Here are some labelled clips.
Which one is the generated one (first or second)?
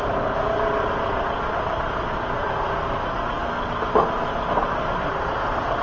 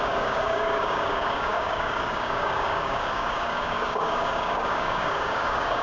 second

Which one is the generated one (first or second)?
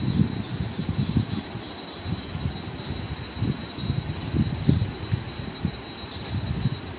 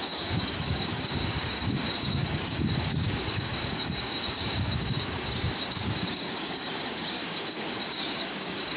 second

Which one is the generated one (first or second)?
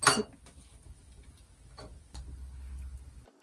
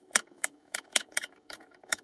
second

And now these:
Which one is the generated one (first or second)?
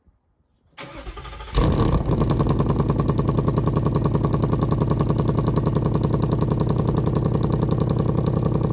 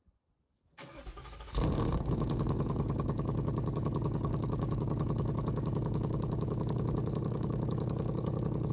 second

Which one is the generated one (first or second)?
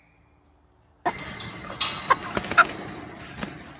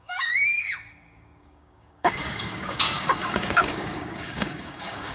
second